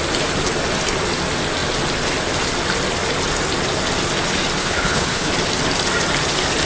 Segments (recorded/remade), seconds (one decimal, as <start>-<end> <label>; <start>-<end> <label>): 0.0-4.6 recorded; 4.6-5.3 remade; 5.3-6.7 recorded